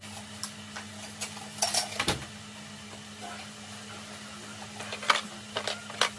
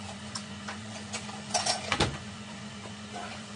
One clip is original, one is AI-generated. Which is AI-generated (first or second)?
second